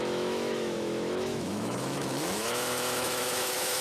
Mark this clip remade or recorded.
remade